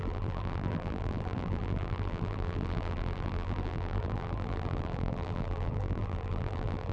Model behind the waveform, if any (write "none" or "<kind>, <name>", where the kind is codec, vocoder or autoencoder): vocoder, BigVGAN v2